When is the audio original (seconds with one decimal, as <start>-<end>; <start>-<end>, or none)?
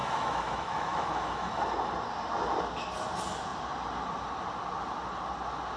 1.6-5.8